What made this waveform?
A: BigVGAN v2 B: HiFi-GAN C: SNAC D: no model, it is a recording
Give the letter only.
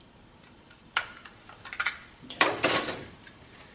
A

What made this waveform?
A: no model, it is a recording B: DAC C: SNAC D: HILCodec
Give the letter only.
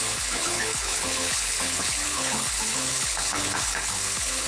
D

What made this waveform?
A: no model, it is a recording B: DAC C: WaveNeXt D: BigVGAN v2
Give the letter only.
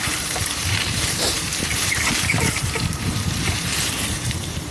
D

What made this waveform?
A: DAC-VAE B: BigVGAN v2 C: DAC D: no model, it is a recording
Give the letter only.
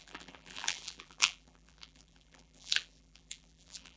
B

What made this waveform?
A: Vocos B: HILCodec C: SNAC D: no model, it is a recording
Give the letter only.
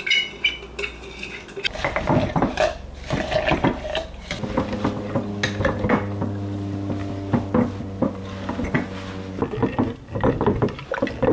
D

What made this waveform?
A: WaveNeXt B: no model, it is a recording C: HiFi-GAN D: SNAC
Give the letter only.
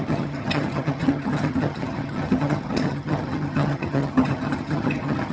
C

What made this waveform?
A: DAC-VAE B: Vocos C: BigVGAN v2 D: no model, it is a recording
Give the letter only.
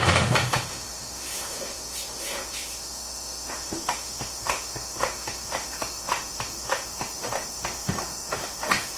A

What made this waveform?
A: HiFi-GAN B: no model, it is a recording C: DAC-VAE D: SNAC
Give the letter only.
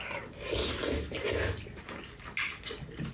B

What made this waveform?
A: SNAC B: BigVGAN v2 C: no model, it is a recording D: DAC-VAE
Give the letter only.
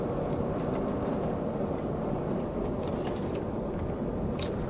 C